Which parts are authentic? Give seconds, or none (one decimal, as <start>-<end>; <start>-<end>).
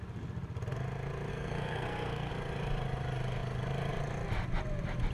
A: 0.0-1.3; 2.3-5.1